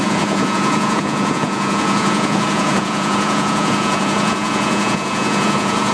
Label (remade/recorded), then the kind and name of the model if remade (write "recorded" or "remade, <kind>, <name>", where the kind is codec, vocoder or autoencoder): remade, vocoder, Vocos